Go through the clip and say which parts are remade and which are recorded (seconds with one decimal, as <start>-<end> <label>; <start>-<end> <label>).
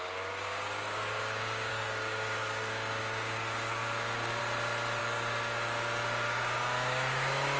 0.0-4.4 remade; 4.4-5.0 recorded; 5.0-7.6 remade